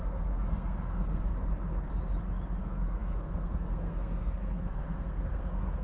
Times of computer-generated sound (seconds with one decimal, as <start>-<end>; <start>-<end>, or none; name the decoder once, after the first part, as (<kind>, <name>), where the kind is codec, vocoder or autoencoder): 0.0-1.3 (codec, SNAC); 2.6-5.8